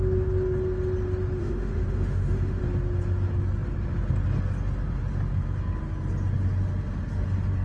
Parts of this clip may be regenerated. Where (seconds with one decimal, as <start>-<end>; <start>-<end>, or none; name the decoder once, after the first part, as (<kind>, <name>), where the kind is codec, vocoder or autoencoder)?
1.4-2.6 (autoencoder, DAC-VAE)